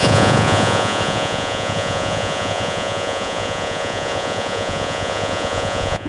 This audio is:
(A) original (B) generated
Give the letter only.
B